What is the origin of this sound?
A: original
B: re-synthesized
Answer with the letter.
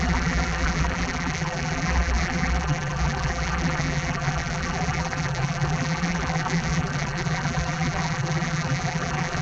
B